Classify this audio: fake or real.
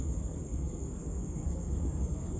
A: fake